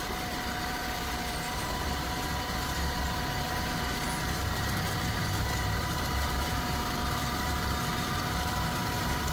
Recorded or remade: remade